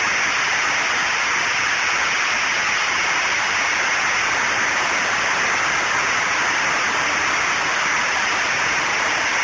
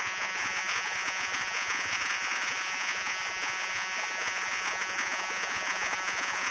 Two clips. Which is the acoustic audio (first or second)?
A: first